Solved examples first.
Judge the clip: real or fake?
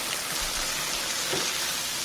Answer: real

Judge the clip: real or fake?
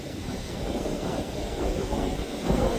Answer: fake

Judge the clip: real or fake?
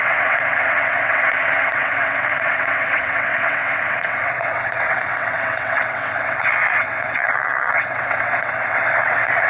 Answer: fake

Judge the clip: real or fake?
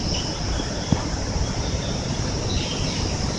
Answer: real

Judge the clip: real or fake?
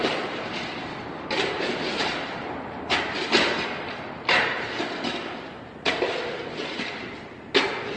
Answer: real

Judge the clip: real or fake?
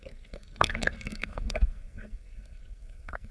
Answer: fake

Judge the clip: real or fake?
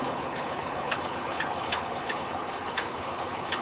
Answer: fake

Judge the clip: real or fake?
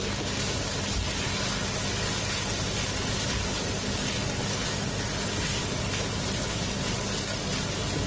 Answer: real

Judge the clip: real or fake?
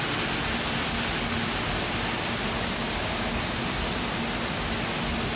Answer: real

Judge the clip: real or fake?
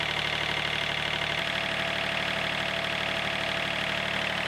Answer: real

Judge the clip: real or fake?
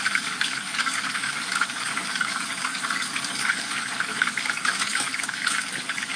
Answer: fake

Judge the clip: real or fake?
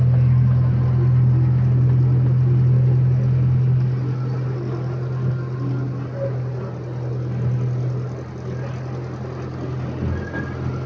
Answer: real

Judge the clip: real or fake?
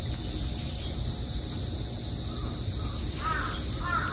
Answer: real